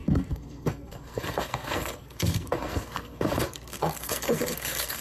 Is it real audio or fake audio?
fake